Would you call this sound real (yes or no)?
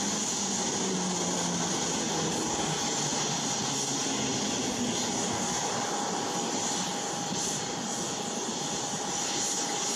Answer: yes